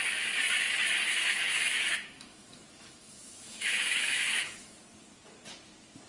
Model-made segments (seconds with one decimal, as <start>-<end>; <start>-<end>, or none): 1.1-4.8